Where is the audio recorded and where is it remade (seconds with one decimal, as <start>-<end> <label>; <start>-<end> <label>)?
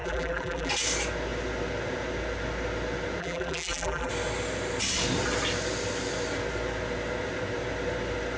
0.0-0.7 remade; 0.7-3.2 recorded; 3.2-4.1 remade; 4.1-8.4 recorded